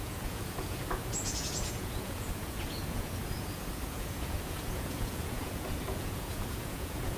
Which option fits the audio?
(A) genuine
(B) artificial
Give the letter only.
B